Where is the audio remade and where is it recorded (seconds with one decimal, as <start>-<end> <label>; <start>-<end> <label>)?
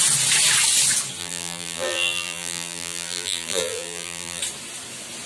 0.0-1.2 recorded; 1.2-4.4 remade; 4.4-5.3 recorded